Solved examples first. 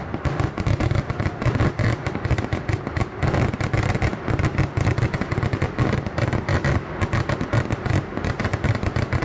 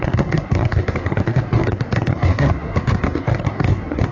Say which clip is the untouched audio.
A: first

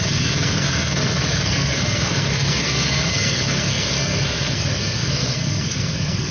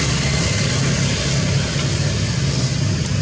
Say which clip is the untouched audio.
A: second